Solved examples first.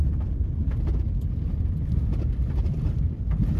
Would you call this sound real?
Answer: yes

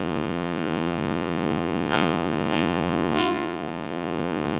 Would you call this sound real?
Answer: no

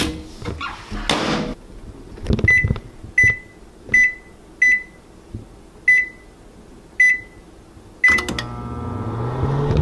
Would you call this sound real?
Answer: yes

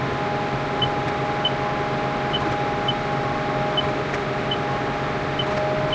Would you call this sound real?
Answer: yes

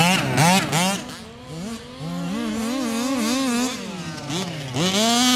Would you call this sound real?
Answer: yes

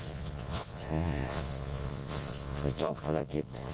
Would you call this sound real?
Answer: no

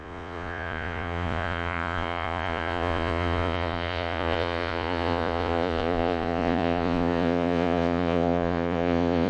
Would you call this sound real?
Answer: no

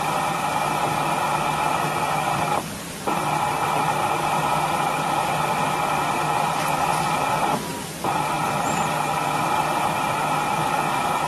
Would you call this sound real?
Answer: yes